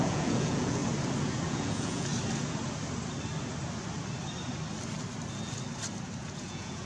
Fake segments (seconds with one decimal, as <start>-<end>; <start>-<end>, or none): 0.0-0.8; 1.5-2.1; 6.2-6.9